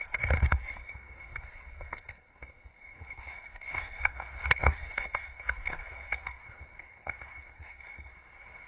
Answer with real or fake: fake